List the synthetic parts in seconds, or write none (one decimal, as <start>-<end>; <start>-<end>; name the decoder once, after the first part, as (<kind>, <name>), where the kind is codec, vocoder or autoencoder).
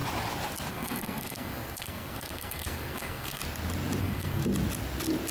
0.7-3.4 (codec, SNAC); 4.0-4.4